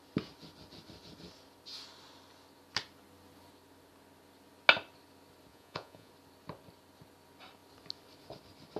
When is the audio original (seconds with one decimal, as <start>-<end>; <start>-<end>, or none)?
0.0-5.5; 6.1-8.8